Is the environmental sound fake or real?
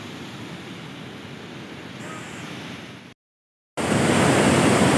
real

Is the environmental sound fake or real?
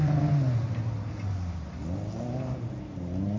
real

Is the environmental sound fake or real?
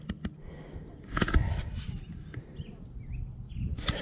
real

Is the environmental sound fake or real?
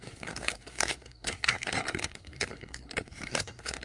fake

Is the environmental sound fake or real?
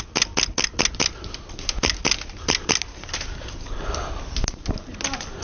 real